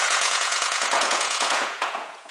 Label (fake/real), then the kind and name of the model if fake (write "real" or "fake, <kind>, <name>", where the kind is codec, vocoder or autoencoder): fake, vocoder, Vocos